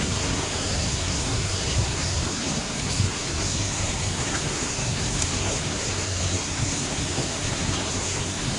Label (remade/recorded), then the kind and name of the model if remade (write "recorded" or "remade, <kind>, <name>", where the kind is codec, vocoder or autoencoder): remade, codec, SNAC